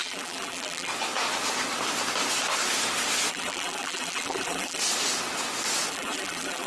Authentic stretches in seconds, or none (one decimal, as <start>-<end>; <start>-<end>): 0.9-3.3; 4.8-5.9